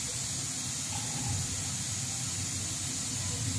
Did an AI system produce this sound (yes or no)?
no